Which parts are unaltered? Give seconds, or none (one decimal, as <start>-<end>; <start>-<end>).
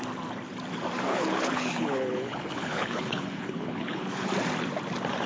0.0-1.1; 4.3-5.3